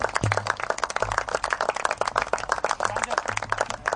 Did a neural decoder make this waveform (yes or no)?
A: no